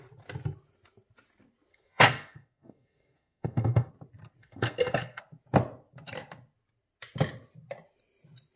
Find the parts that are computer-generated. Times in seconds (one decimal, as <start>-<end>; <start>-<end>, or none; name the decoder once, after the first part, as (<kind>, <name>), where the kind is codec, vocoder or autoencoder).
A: 1.7-3.9 (codec, SNAC); 4.4-5.2